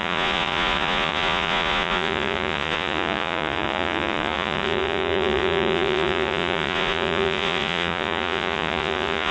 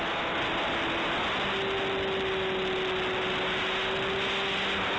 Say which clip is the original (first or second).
second